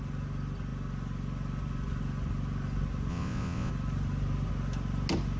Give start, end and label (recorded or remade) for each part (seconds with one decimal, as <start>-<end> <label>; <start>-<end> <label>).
0.0-3.1 recorded; 3.1-3.7 remade; 3.7-5.4 recorded